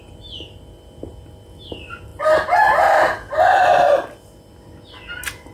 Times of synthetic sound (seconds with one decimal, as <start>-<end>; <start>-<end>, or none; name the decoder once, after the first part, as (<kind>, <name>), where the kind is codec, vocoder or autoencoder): 2.1-3.6 (vocoder, BigVGAN v2)